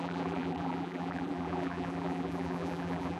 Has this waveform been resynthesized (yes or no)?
yes